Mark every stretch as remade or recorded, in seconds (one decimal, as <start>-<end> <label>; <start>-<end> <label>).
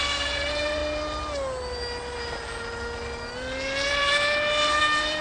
0.0-0.8 remade; 0.8-3.9 recorded; 3.9-5.2 remade